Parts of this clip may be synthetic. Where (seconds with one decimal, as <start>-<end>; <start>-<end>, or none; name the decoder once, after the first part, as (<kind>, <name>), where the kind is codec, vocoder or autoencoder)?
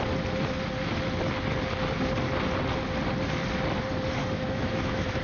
4.2-5.2 (autoencoder, DAC-VAE)